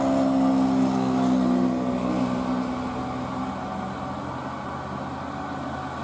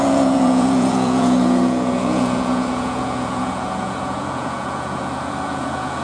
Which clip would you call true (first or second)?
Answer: first